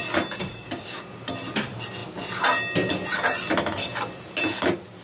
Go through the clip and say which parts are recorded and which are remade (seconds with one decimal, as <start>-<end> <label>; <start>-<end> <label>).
0.0-0.4 recorded; 0.4-1.0 remade; 1.0-5.0 recorded